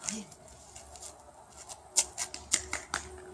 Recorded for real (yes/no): yes